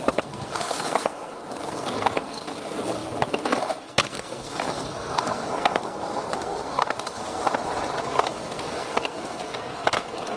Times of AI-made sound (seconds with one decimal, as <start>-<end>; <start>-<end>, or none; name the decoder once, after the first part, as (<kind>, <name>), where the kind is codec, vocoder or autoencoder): 0.0-7.4 (codec, SNAC); 8.0-10.4